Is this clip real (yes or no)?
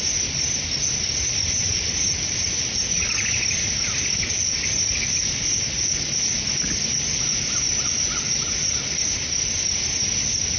yes